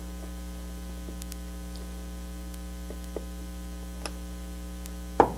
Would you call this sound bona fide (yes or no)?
yes